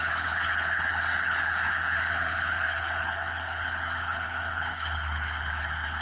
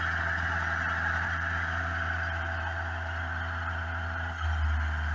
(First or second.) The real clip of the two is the second